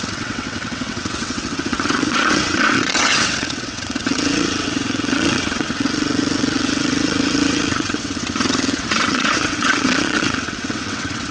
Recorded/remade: remade